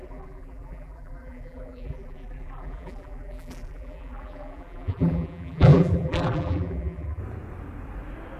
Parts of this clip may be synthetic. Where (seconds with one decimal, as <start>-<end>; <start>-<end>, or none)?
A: 0.0-7.2